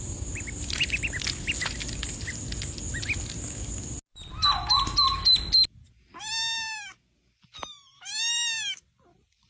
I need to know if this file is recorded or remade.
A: recorded